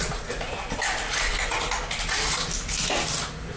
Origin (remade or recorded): recorded